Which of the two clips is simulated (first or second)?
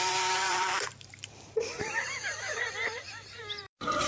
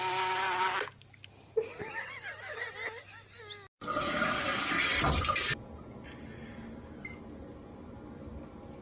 first